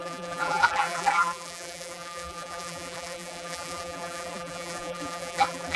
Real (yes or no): no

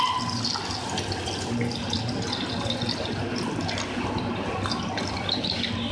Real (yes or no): yes